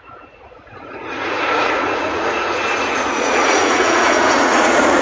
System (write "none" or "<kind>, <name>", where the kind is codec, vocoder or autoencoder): vocoder, Vocos